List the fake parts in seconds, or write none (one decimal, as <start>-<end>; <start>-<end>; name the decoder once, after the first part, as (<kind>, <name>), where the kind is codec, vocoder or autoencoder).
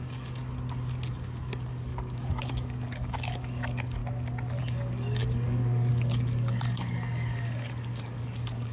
0.0-0.4 (codec, DAC); 1.1-4.0; 4.6-8.7